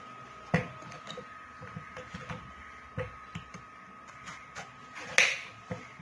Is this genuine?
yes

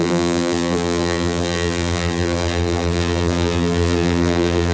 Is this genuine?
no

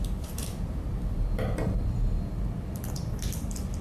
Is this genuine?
no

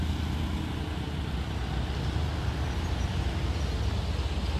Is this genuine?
yes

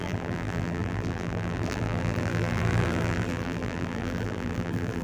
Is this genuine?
no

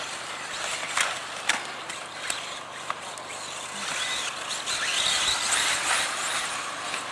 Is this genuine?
yes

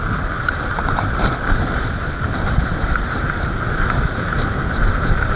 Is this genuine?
no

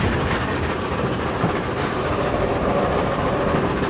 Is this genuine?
no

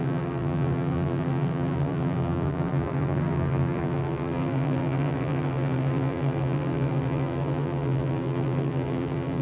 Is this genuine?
no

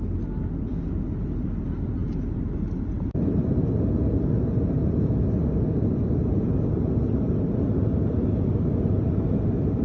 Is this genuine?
yes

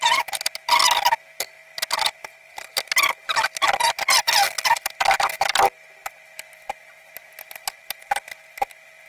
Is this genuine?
yes